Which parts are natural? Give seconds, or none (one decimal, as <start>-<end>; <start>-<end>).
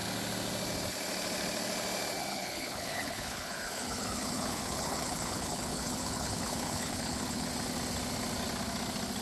0.0-2.3; 7.5-9.2